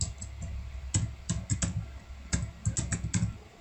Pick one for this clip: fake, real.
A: real